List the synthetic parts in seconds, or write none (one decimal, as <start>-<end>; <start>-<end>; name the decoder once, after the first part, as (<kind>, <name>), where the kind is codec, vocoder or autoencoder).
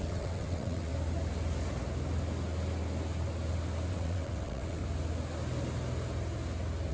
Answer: 0.0-0.9 (vocoder, WaveNeXt); 3.9-4.8